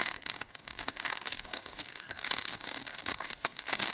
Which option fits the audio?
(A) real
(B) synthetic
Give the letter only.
B